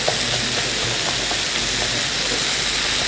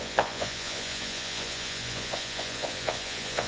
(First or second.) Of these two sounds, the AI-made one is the second